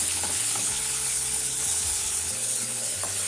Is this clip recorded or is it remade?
remade